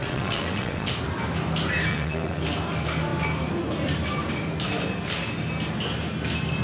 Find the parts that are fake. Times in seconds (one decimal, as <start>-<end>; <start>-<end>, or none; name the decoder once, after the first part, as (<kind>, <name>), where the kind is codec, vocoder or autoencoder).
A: 0.0-0.9 (vocoder, WaveNeXt); 1.9-2.4